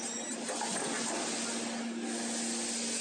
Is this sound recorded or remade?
recorded